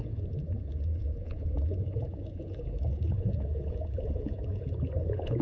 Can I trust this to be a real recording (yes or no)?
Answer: no